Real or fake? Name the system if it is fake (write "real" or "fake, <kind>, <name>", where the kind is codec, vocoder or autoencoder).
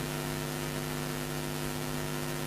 real